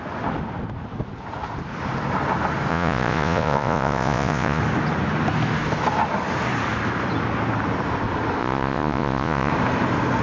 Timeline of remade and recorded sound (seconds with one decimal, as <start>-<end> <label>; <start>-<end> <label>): 0.0-2.7 recorded; 2.7-4.6 remade; 4.6-8.4 recorded; 8.4-9.5 remade; 9.5-10.2 recorded